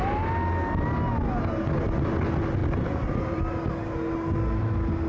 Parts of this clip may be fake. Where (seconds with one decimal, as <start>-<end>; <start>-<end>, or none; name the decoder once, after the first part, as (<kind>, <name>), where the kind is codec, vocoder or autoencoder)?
2.6-3.4 (vocoder, BigVGAN v2)